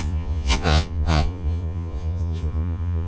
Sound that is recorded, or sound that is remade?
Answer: remade